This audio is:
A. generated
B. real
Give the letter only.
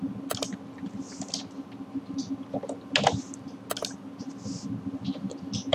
B